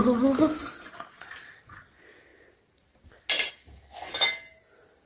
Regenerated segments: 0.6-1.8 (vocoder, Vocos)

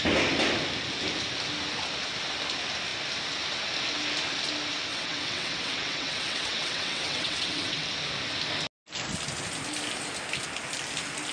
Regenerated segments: 4.9-7.9 (vocoder, WaveNeXt)

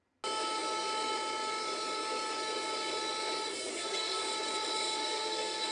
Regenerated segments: 3.7-4.3 (codec, SNAC); 5.0-5.7

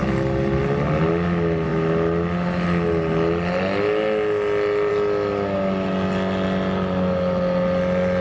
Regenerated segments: none